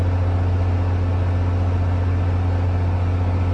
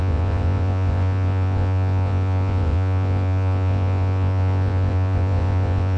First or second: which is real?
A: first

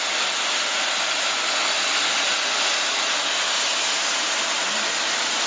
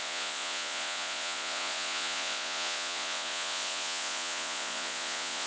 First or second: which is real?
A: first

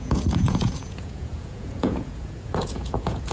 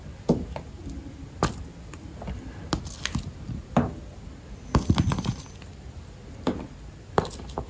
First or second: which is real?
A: second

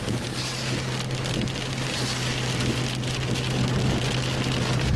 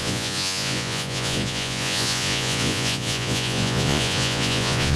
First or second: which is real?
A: first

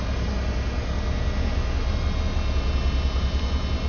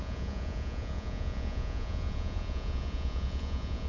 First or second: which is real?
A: first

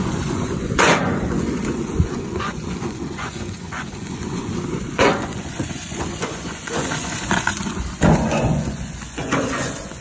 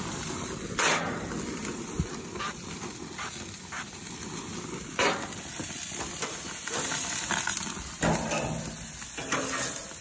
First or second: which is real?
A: second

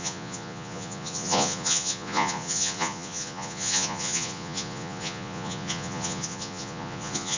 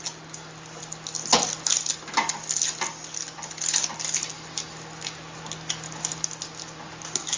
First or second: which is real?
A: second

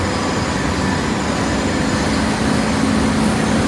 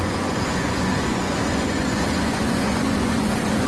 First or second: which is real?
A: first